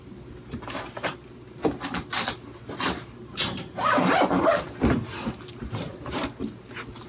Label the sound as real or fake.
fake